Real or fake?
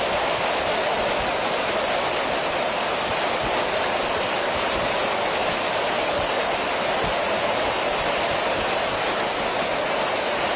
real